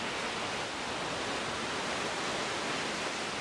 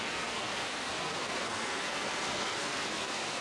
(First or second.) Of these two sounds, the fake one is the second